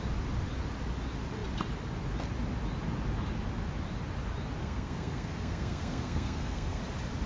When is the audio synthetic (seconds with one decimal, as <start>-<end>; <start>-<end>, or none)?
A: 4.6-6.8